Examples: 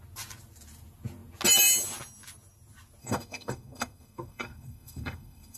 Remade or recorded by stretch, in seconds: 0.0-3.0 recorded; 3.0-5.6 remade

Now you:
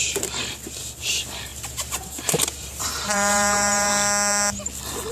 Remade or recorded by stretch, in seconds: 0.0-1.5 recorded; 1.5-3.9 remade; 3.9-5.1 recorded